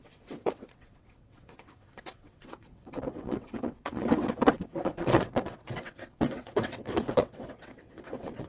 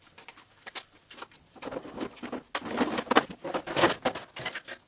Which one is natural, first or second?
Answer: second